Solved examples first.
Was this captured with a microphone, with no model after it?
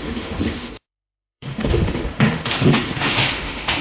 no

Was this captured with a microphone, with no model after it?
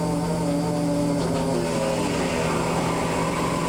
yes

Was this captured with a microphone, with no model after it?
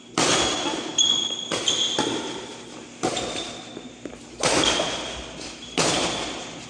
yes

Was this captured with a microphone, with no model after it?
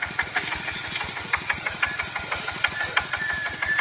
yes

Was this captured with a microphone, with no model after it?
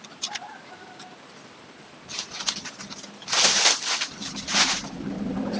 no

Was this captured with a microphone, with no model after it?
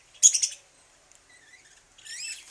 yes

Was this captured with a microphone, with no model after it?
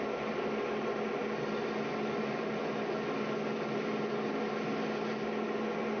yes